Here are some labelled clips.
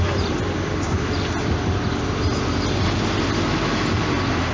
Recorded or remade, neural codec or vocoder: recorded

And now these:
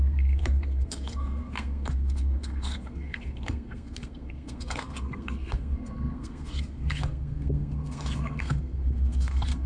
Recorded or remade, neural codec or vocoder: remade, codec, SNAC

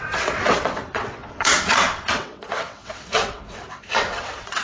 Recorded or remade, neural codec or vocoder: remade, vocoder, WaveNeXt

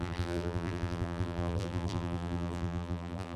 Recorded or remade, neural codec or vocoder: remade, vocoder, BigVGAN v2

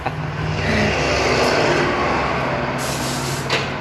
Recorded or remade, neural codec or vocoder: recorded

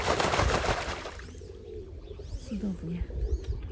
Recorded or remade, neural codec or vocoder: recorded